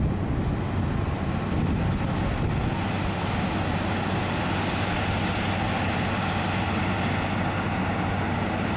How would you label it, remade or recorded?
recorded